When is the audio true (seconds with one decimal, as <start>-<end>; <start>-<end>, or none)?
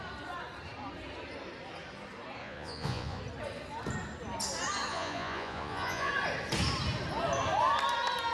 0.0-2.4; 3.2-4.9; 6.1-8.3